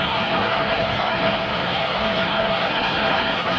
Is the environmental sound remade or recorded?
remade